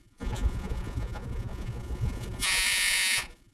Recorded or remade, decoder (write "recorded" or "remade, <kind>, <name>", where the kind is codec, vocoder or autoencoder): remade, vocoder, Vocos